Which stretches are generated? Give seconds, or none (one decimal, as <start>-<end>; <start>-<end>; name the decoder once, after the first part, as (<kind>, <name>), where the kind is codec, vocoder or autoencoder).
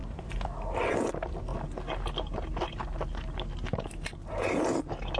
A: none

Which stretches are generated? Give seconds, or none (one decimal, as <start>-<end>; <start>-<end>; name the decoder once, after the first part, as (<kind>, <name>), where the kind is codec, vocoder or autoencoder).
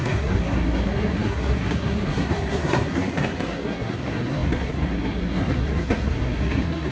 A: 0.0-6.9 (codec, SNAC)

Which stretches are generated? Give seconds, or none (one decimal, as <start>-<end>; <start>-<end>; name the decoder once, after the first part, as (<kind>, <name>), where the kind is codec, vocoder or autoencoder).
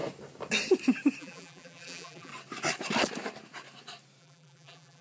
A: 1.2-2.3 (vocoder, BigVGAN v2); 4.2-5.0